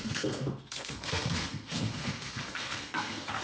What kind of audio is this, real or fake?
fake